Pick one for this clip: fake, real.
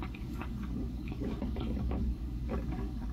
fake